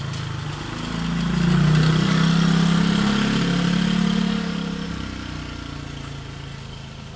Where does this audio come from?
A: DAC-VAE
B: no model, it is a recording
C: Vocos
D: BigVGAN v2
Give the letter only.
B